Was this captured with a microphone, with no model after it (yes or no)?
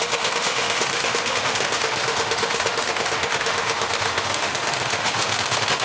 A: no